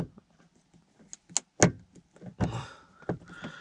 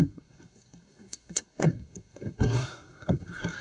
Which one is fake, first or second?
second